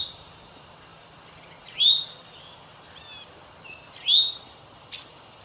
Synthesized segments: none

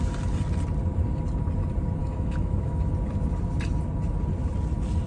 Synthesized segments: 2.0-2.9 (autoencoder, DAC-VAE)

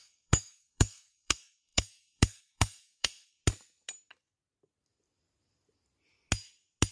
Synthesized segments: 0.0-3.4 (codec, SNAC)

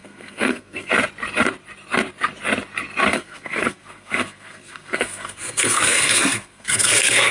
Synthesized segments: 0.0-0.9 (codec, SNAC); 3.1-7.3

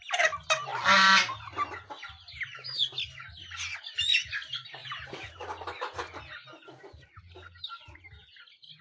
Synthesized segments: none

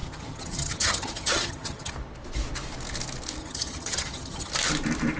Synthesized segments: 0.0-1.9 (vocoder, HiFi-GAN); 3.4-4.5

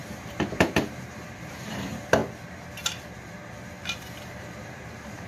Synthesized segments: 0.0-2.2 (vocoder, BigVGAN v2); 4.2-5.3